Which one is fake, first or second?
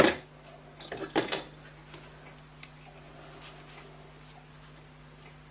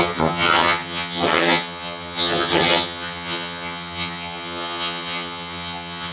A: second